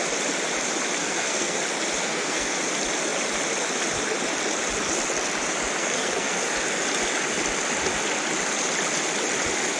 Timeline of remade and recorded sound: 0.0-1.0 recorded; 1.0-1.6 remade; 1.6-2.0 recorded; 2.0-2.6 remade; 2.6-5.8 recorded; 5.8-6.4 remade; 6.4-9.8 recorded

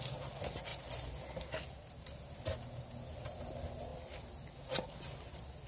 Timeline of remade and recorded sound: 0.0-5.7 recorded

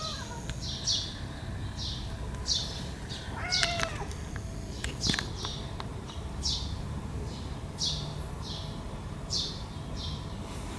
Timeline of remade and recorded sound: 0.0-5.9 recorded; 5.9-9.7 remade; 9.7-10.8 recorded

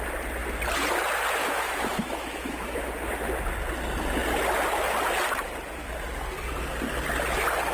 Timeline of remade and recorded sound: 0.0-1.4 recorded; 1.4-2.9 remade; 2.9-7.7 recorded

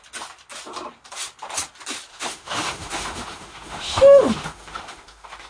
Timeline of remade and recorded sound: 0.0-2.1 recorded; 2.1-5.5 remade